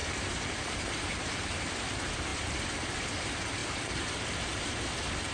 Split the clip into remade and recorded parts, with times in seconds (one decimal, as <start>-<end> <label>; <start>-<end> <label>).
0.0-5.3 recorded